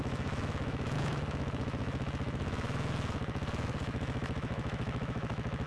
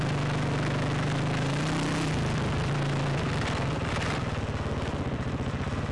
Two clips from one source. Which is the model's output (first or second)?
first